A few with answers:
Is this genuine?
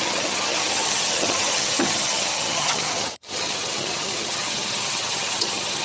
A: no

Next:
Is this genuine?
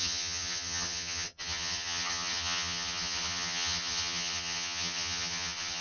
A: no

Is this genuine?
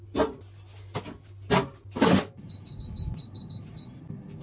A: yes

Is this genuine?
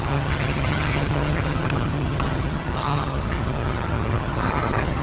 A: no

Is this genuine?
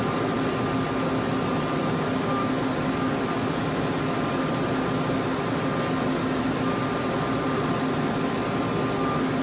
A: yes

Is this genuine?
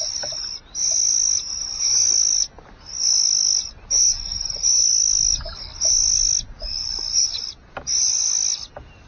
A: yes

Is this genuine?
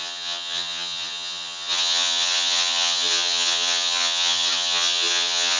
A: no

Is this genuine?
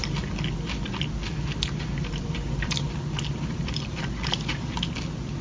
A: yes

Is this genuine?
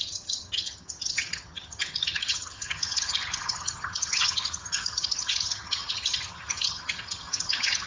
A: no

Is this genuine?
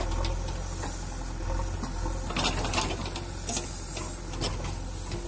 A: yes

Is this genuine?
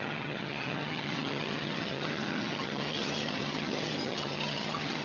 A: no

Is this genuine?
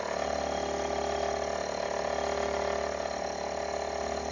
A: yes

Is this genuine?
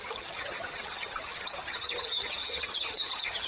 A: no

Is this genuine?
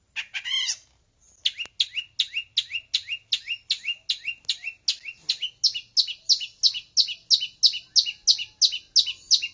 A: yes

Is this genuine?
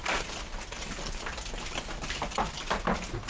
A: yes